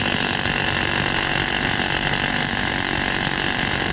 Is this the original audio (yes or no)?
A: no